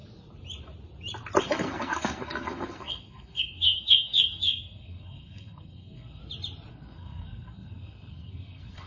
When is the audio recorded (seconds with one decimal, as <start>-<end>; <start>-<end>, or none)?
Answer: 0.0-1.4; 6.2-6.7